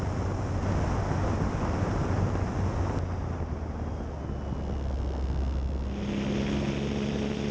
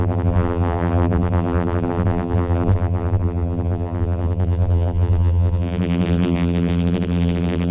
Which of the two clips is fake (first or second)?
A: second